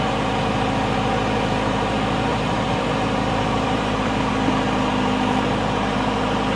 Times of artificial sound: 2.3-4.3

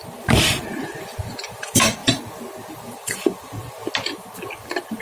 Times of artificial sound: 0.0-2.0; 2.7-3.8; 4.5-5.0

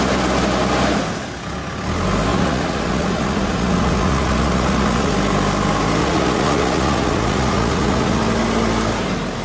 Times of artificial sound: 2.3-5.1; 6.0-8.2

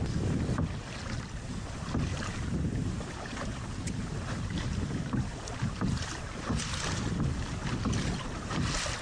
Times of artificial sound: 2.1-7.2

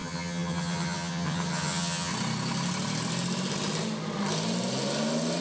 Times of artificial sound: 0.0-2.1

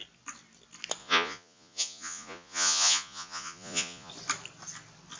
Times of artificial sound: 1.0-4.1